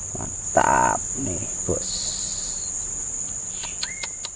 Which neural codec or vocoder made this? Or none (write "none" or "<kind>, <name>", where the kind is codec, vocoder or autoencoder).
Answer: none